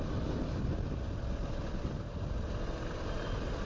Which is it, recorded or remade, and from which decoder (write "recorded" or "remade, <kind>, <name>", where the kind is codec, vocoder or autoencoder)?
recorded